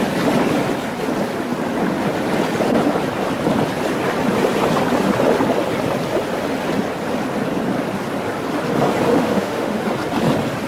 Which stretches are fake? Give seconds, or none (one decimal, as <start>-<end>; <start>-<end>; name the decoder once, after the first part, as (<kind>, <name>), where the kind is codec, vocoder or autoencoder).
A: 9.1-9.8 (autoencoder, DAC-VAE)